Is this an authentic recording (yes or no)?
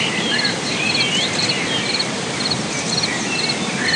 yes